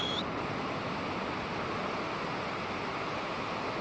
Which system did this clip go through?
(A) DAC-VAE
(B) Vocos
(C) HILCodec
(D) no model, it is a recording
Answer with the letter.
D